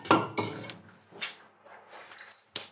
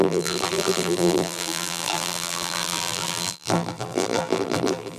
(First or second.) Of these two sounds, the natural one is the first